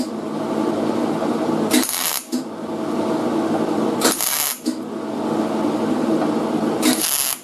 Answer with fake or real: real